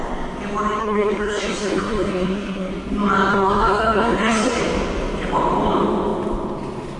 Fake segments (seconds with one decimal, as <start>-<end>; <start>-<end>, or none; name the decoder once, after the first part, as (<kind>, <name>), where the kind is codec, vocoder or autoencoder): 0.8-2.7 (codec, SNAC); 3.3-4.6